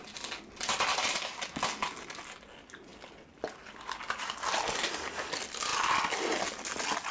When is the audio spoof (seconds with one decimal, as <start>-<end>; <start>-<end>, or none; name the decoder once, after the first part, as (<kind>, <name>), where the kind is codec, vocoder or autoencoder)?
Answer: none